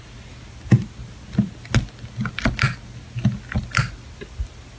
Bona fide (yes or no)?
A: yes